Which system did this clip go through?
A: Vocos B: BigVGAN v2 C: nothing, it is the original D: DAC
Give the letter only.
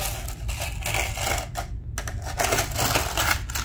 C